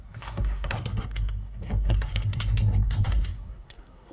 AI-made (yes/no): yes